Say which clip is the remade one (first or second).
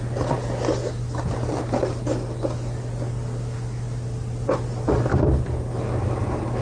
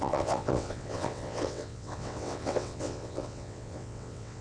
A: second